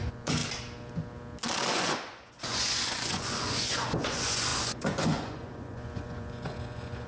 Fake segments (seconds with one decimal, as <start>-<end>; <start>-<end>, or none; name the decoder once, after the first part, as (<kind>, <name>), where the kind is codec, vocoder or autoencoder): 0.0-0.4 (vocoder, Vocos); 1.7-7.1